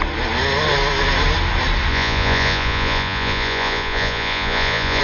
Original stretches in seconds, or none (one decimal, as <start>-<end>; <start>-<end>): 0.0-1.9